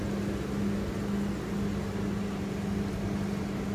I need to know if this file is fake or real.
real